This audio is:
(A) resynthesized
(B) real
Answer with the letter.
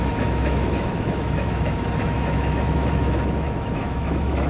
A